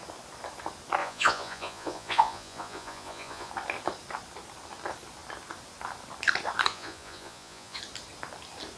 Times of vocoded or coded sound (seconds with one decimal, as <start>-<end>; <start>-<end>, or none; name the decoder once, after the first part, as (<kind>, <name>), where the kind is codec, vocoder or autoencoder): 1.0-3.5 (vocoder, Vocos); 6.7-7.8